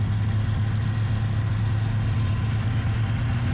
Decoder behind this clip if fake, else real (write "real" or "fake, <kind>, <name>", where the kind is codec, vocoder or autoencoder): real